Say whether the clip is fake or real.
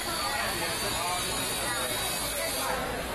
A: real